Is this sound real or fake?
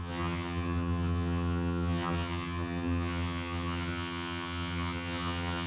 fake